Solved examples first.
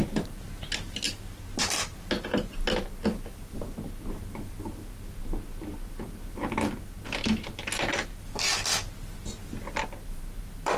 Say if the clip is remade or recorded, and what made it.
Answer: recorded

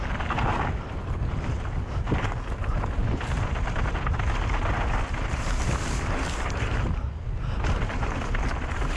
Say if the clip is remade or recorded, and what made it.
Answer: recorded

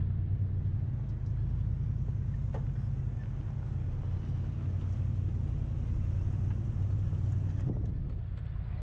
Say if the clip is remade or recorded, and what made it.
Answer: recorded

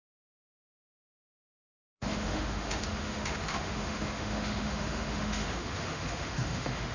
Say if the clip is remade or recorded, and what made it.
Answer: remade, autoencoder, DAC-VAE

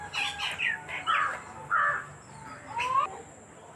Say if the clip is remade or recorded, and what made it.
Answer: recorded